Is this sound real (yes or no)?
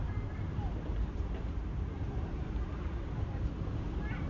yes